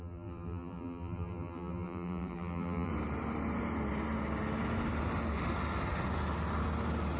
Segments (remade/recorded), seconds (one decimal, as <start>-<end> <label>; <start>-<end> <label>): 0.0-2.9 remade; 2.9-7.2 recorded